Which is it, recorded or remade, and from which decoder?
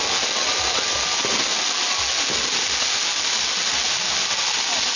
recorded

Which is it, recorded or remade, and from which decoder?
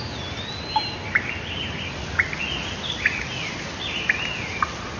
recorded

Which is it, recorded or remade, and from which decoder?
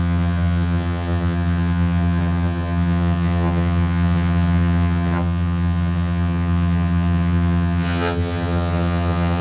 remade, vocoder, HiFi-GAN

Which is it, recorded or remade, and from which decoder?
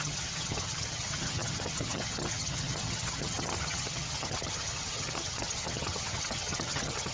remade, vocoder, HiFi-GAN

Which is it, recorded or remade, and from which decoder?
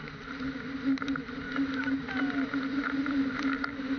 recorded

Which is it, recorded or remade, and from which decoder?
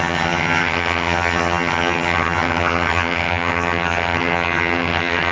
remade, vocoder, HiFi-GAN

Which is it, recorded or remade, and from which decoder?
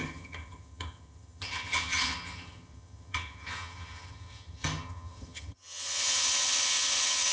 remade, vocoder, HiFi-GAN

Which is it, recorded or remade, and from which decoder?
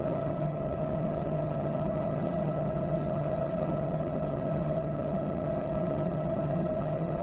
remade, vocoder, HiFi-GAN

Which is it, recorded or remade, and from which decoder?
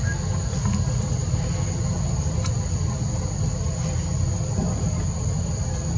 recorded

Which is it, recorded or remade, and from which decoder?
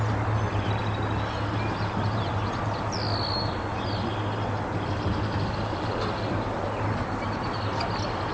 recorded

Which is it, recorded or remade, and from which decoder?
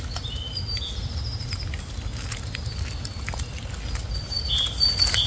recorded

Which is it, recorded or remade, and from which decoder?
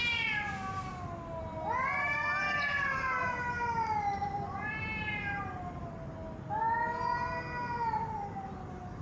recorded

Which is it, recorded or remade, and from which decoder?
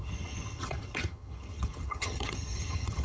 remade, vocoder, HiFi-GAN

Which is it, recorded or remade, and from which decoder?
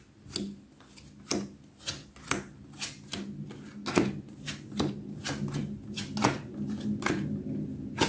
recorded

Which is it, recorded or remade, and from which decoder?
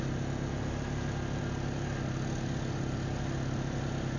recorded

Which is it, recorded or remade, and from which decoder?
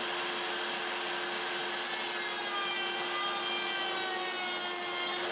recorded